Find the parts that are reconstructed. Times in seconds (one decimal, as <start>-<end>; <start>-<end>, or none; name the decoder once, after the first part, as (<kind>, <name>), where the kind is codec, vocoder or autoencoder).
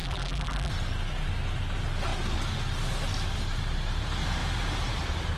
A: 0.0-0.7 (vocoder, BigVGAN v2)